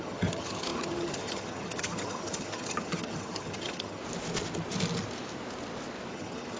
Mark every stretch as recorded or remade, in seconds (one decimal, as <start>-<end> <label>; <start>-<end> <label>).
0.0-4.0 remade; 4.0-6.1 recorded; 6.1-6.6 remade